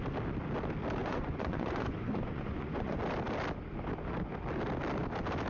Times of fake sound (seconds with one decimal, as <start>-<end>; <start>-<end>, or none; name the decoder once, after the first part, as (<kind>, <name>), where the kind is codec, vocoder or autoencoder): 1.0-3.0 (vocoder, Vocos)

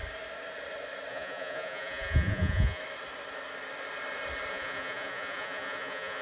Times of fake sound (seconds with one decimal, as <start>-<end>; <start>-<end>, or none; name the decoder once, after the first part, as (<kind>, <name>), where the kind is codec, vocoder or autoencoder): 1.1-2.8 (vocoder, Vocos); 4.5-6.2

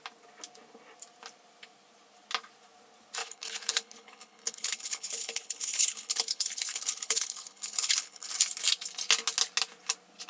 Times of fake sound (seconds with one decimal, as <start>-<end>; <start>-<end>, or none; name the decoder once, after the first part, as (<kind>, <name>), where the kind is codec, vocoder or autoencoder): 3.2-8.3 (codec, HILCodec)

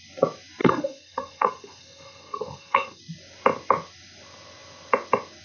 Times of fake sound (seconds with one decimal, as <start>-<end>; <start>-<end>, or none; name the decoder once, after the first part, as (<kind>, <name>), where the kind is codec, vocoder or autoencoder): 0.6-3.0 (codec, SNAC)

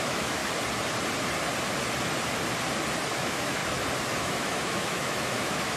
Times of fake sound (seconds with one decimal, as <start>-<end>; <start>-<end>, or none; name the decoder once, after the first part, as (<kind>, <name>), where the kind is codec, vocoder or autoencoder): 0.0-0.4 (autoencoder, DAC-VAE); 3.1-3.6; 4.2-5.8